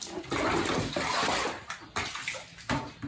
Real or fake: real